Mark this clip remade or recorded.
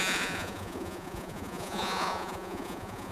remade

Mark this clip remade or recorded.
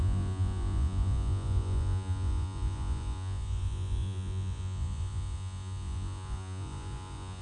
remade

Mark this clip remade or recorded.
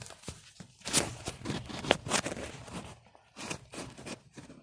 recorded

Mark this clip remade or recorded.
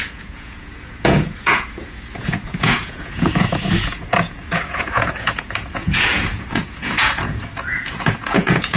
remade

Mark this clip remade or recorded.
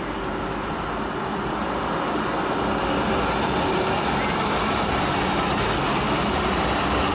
recorded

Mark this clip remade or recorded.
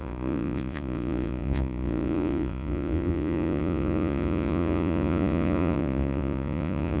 remade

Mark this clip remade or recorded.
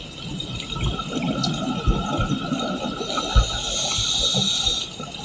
recorded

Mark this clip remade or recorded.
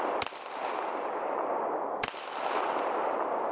recorded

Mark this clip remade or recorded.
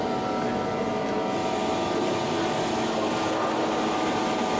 recorded